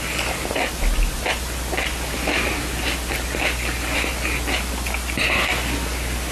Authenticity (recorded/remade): recorded